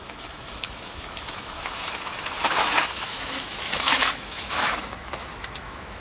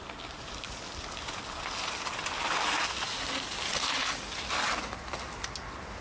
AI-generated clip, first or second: first